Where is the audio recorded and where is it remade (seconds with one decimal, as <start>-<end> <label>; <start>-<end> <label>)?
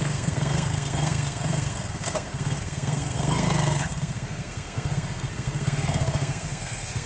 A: 0.0-7.1 remade